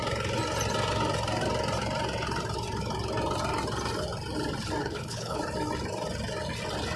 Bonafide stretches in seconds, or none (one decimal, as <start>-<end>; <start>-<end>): 0.0-4.8; 5.4-7.0